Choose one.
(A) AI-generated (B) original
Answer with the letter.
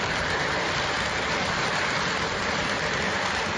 B